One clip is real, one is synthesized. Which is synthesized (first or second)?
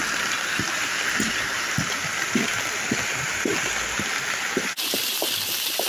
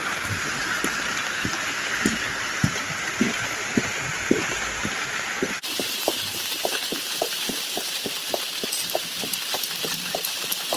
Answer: second